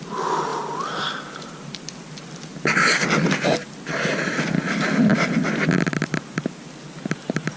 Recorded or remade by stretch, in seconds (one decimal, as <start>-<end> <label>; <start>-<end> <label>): 0.0-7.6 recorded